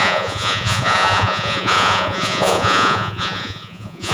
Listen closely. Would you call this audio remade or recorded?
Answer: remade